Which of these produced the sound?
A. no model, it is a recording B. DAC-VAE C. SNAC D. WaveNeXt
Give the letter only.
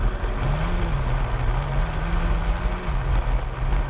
A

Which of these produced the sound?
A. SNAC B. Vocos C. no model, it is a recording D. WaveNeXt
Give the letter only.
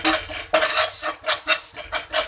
C